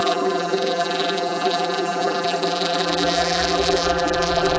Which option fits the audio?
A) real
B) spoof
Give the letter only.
B